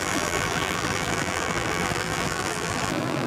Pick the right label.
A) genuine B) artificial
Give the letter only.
B